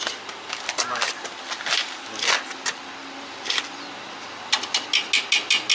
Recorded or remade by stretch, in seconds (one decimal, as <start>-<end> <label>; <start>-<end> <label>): 0.0-5.7 recorded